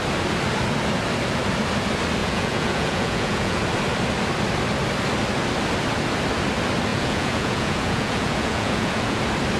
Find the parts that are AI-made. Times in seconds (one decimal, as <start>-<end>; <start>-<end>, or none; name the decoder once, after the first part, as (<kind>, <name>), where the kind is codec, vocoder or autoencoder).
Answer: 2.2-3.6 (vocoder, Vocos); 6.9-9.2